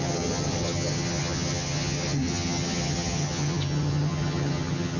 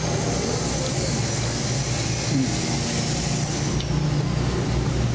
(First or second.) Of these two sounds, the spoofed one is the first